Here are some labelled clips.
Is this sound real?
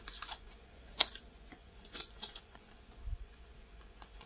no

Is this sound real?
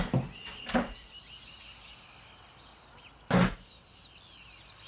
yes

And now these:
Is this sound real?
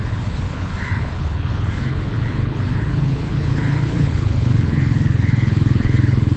no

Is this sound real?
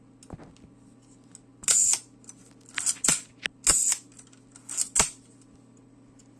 yes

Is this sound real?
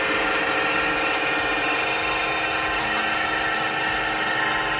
yes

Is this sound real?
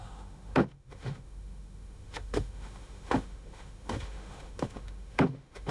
no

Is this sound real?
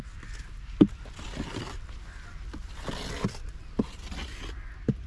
yes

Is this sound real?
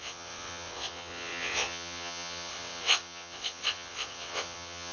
no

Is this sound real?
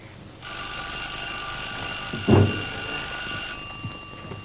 yes